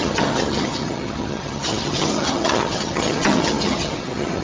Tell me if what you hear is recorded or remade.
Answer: remade